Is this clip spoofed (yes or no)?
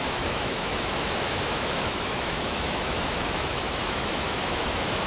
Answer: yes